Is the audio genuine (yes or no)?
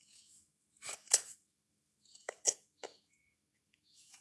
no